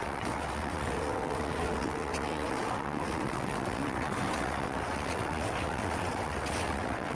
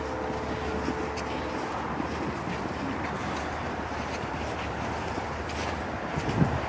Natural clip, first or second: second